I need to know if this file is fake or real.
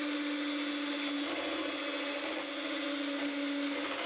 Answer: real